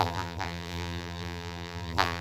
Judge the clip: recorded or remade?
remade